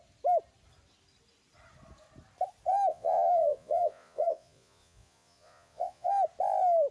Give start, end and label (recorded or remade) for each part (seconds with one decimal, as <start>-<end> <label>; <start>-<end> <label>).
0.0-2.9 recorded; 2.9-6.1 remade; 6.1-6.9 recorded